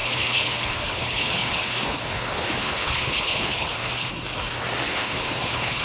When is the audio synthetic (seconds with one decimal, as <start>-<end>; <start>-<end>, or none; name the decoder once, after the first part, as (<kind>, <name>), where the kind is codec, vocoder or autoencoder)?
0.0-4.1 (codec, HILCodec); 4.9-5.8